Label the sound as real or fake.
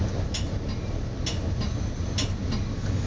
real